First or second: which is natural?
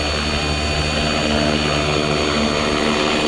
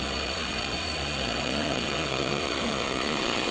first